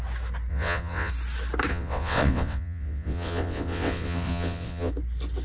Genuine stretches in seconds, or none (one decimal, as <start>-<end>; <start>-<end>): 0.0-0.5; 1.1-1.7; 4.9-5.4